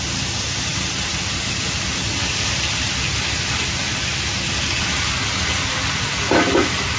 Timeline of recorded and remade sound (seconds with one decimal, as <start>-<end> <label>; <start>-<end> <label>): 0.0-7.0 recorded